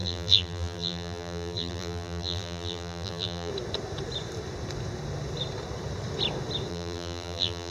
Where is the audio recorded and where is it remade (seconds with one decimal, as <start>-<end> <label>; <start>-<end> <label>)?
0.0-3.5 remade; 3.5-6.7 recorded; 6.7-7.7 remade